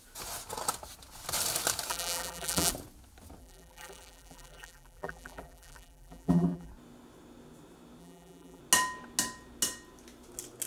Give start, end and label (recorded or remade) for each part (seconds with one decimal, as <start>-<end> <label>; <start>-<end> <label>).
0.0-1.9 recorded; 1.9-2.7 remade; 2.7-3.4 recorded; 3.4-6.7 remade; 6.7-8.0 recorded; 8.0-8.6 remade; 8.6-10.7 recorded